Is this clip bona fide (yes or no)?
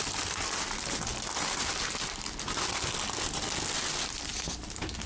yes